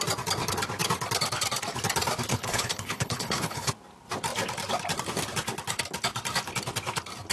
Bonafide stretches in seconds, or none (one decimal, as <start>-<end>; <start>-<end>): 0.0-2.3; 3.7-7.3